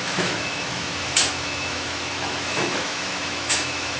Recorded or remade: remade